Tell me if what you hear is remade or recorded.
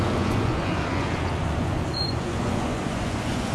remade